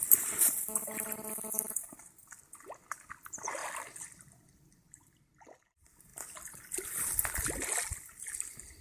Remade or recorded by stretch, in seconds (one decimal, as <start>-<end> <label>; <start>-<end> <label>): 0.0-0.8 recorded; 0.8-1.6 remade; 1.6-3.6 recorded; 3.6-5.2 remade; 5.2-8.8 recorded